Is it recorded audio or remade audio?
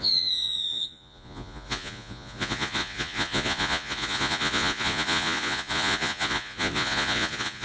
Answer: remade